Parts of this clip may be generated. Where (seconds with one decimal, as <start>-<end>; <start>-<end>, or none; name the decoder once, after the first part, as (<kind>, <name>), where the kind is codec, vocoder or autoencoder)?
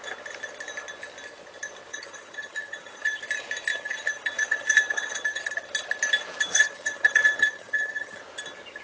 1.9-3.2 (vocoder, HiFi-GAN); 3.7-5.4; 6.5-8.2